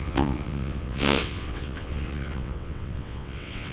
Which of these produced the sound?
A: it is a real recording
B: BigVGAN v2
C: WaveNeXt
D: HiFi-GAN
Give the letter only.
C